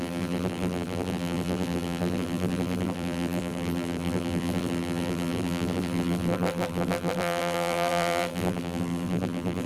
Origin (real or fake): fake